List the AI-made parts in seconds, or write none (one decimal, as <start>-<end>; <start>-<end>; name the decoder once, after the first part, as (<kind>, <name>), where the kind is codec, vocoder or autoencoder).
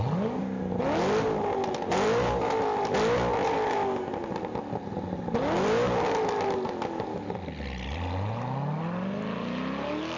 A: none